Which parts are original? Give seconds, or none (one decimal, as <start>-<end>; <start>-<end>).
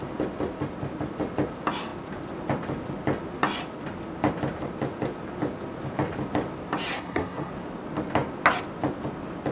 0.0-6.9; 7.5-9.5